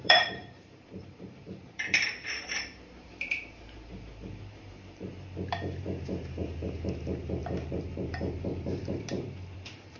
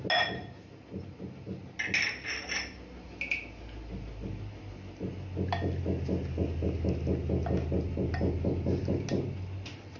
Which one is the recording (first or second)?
second